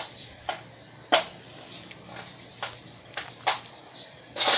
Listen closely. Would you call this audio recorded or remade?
recorded